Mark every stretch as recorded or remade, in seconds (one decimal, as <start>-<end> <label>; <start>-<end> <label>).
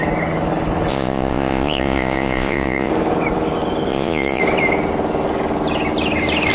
0.0-0.9 recorded; 0.9-2.9 remade; 2.9-3.9 recorded; 3.9-4.4 remade; 4.4-6.5 recorded